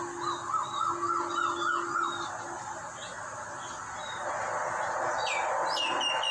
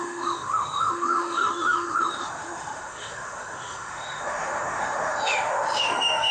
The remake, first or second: second